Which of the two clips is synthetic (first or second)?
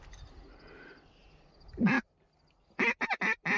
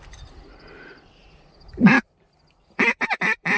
second